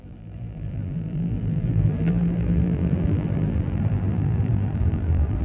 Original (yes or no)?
no